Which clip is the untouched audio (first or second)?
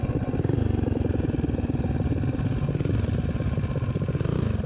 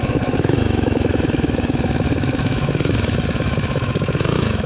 first